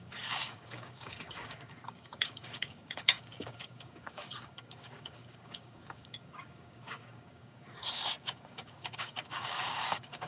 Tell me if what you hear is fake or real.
fake